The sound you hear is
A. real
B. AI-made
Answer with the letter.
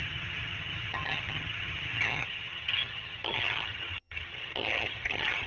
B